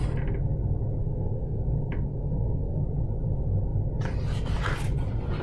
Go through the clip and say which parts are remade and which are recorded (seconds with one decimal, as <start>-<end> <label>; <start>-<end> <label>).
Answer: 0.0-1.0 recorded; 1.0-1.6 remade; 1.6-2.1 recorded; 2.1-2.8 remade; 2.8-5.4 recorded